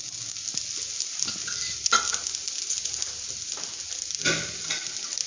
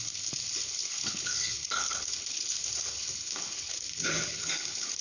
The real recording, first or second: first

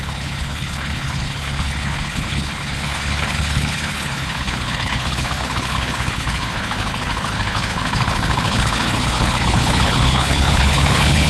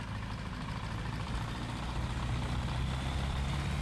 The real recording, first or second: second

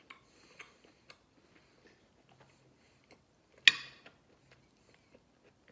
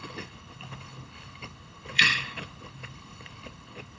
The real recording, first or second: first